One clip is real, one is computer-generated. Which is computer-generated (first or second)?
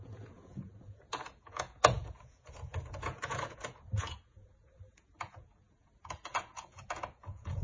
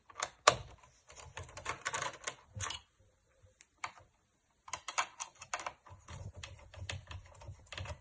first